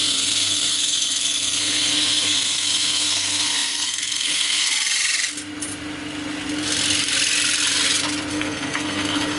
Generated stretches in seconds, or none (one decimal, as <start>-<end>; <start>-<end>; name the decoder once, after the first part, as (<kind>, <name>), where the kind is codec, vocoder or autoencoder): 0.0-4.7 (codec, SNAC); 8.3-9.4